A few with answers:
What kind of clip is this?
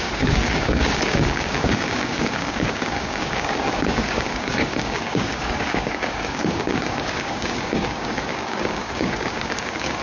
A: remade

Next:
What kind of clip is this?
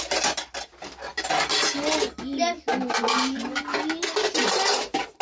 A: recorded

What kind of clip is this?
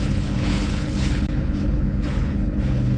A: remade